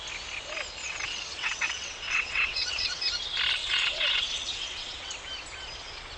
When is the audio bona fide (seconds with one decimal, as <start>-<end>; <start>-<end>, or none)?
0.0-0.8; 3.0-3.6; 5.1-6.2